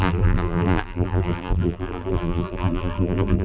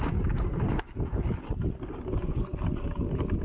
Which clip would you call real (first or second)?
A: second